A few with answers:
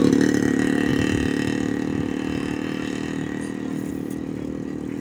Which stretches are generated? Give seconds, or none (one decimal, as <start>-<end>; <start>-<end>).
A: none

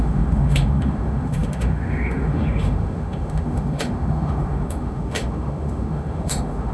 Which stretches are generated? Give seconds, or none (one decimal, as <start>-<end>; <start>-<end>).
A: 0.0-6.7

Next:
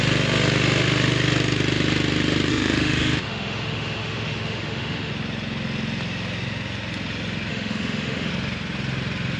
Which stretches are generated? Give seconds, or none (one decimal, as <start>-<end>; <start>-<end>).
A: 2.5-5.1; 7.5-8.3